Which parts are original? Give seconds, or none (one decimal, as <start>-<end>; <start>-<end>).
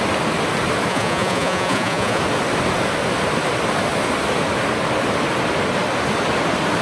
0.0-0.9; 2.2-6.8